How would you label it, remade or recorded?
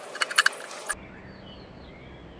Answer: recorded